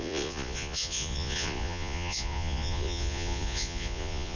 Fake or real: fake